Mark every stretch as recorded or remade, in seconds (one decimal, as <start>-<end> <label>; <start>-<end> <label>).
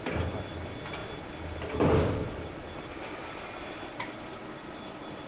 0.0-5.3 recorded